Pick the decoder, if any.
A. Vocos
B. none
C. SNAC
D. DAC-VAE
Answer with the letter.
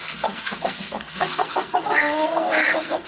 C